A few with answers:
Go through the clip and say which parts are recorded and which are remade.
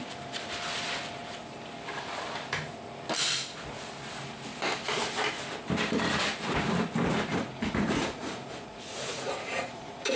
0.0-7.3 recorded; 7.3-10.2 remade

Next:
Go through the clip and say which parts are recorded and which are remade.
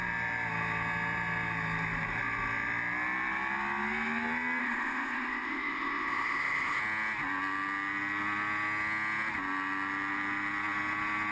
0.0-4.6 recorded; 4.6-6.8 remade; 6.8-11.3 recorded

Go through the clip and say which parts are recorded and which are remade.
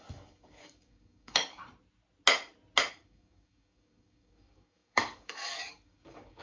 0.0-1.6 remade; 1.6-2.9 recorded; 2.9-6.4 remade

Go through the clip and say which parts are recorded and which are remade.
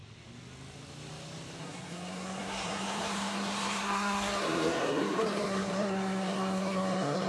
0.0-1.6 recorded; 1.6-7.3 remade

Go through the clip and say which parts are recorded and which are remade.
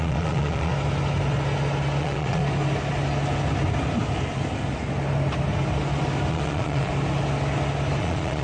0.0-0.7 remade; 0.7-2.0 recorded; 2.0-2.4 remade; 2.4-6.3 recorded; 6.3-6.9 remade; 6.9-8.0 recorded; 8.0-8.4 remade